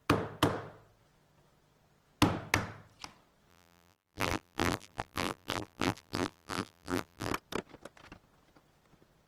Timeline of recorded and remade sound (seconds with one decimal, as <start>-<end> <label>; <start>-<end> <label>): 0.0-3.5 recorded; 3.5-7.3 remade; 7.3-9.3 recorded